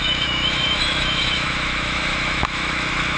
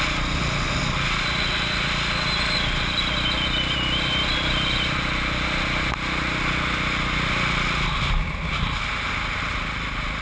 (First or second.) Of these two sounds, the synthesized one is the first